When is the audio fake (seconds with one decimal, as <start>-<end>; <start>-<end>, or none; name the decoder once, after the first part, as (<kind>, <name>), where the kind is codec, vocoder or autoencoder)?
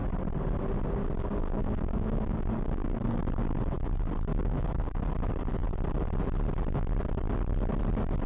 1.4-3.2 (codec, DAC); 4.3-5.0